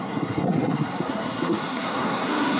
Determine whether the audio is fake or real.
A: fake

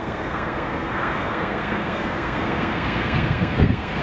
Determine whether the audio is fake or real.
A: fake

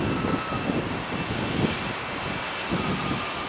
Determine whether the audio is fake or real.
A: real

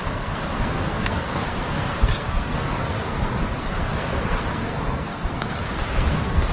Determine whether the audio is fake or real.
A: fake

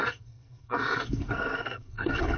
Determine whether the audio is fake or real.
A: fake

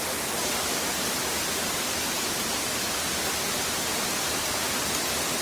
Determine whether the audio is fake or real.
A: real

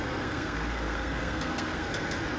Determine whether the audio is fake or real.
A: fake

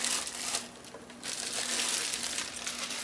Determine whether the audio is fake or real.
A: real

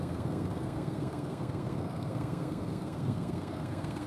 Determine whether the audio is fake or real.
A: fake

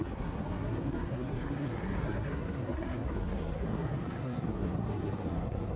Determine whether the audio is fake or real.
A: fake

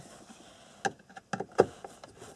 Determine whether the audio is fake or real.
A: real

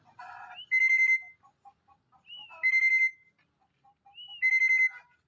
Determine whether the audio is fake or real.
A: real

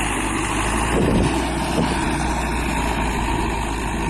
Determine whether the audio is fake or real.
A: real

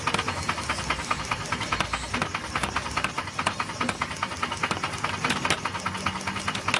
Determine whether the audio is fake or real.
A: real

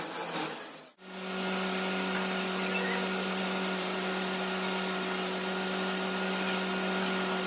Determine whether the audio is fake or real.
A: real